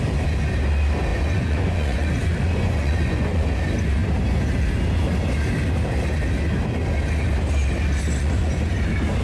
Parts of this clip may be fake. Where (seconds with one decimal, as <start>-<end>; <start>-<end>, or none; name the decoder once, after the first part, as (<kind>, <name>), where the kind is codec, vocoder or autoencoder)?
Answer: 1.1-3.6 (vocoder, Vocos); 8.2-8.7